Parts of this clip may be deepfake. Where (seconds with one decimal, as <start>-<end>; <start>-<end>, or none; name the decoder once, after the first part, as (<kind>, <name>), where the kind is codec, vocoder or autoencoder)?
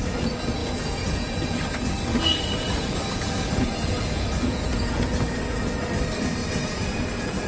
0.6-1.6 (vocoder, Vocos); 2.1-5.0; 6.4-7.5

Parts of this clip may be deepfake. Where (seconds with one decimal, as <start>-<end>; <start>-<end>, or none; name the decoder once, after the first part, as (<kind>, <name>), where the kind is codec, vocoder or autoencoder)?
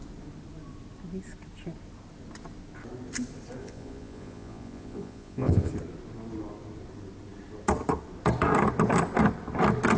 3.6-5.7 (vocoder, Vocos)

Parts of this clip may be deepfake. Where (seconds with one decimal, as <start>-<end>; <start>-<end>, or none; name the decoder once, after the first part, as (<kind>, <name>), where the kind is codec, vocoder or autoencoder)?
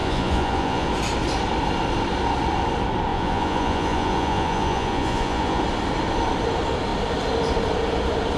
0.0-0.9 (vocoder, Vocos); 3.1-5.6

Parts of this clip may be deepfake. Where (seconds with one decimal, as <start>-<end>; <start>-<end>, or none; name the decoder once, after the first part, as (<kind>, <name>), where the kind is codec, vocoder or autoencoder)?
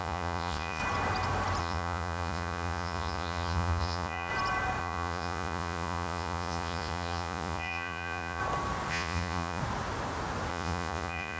0.0-0.8 (vocoder, Vocos); 1.6-4.3; 4.8-8.4; 8.9-9.6; 10.5-11.4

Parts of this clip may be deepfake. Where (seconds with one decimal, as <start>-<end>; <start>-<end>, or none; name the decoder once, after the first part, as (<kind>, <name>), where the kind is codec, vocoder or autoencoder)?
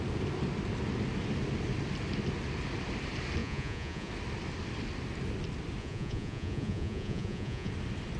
3.4-4.1 (vocoder, Vocos); 5.8-7.7